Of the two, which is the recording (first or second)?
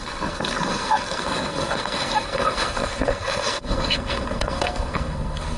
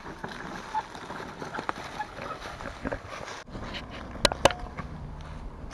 second